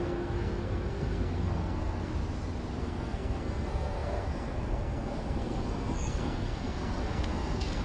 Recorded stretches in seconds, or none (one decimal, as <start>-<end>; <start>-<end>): 2.1-2.8